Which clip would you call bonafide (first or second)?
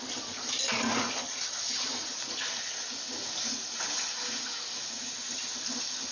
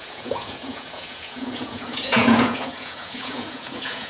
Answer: first